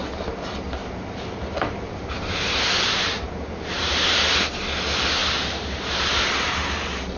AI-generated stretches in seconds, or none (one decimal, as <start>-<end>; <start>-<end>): 0.8-4.2; 5.2-6.5